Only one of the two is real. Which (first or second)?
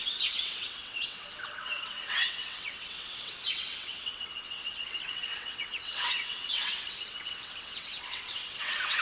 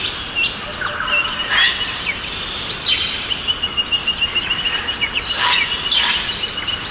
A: second